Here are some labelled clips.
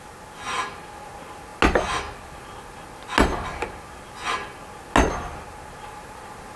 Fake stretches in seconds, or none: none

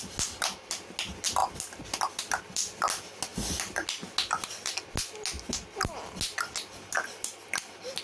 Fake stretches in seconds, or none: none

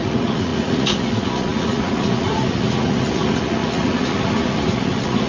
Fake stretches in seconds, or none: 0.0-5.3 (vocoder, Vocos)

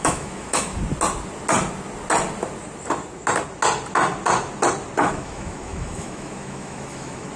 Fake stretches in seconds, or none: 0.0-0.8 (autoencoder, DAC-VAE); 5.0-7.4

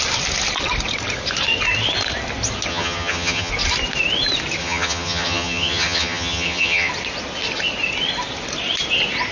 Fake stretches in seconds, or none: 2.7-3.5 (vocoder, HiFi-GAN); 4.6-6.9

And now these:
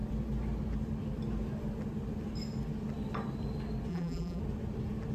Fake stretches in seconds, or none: 3.9-4.4 (vocoder, BigVGAN v2)

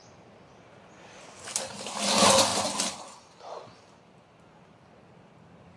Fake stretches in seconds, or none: none